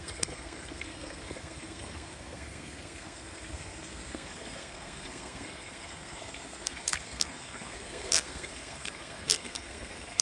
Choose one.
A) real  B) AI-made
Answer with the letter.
B